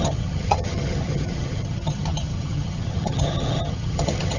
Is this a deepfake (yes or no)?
yes